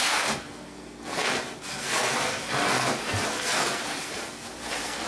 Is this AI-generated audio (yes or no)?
yes